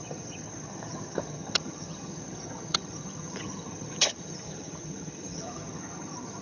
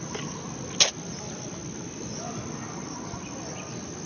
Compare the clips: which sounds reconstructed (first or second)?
first